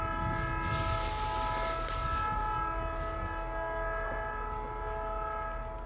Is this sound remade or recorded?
recorded